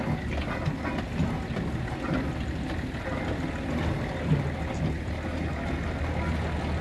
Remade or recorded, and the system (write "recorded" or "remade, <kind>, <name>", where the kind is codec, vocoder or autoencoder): recorded